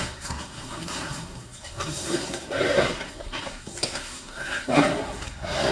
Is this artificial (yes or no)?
yes